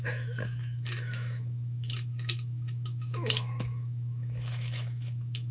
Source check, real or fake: fake